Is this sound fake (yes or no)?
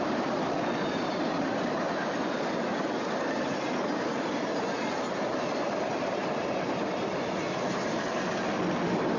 no